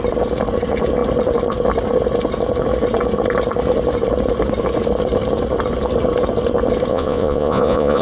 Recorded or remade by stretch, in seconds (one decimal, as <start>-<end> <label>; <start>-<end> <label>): 0.0-6.9 recorded; 6.9-8.0 remade